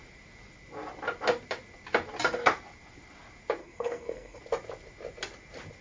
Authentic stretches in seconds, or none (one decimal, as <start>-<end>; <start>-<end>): 0.0-3.6; 4.4-5.8